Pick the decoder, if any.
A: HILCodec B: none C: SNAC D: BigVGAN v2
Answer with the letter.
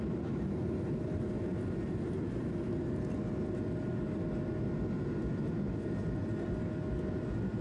B